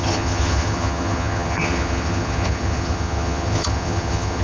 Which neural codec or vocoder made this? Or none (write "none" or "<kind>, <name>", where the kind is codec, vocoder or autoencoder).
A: vocoder, HiFi-GAN